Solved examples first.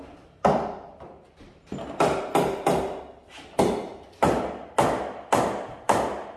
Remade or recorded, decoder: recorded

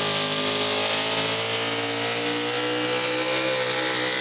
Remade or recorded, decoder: recorded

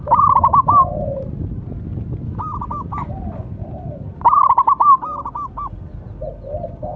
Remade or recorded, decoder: recorded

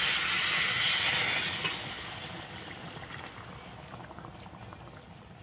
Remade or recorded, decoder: recorded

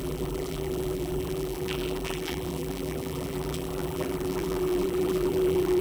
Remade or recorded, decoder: remade, vocoder, BigVGAN v2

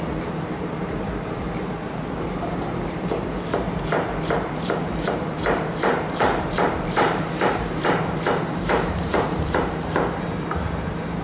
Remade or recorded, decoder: remade, vocoder, BigVGAN v2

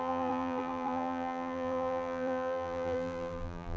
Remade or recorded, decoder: remade, vocoder, BigVGAN v2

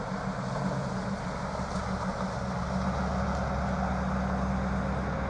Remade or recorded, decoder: recorded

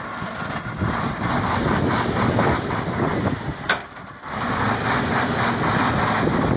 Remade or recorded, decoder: recorded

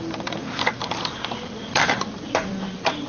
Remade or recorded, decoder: remade, vocoder, BigVGAN v2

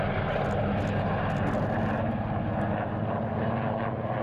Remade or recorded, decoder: recorded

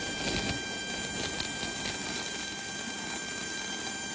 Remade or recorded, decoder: recorded